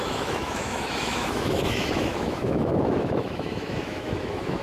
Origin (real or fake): fake